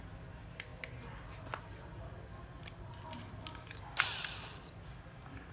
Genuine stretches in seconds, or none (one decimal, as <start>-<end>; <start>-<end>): 0.0-5.5